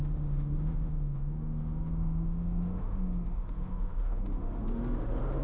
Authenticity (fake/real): fake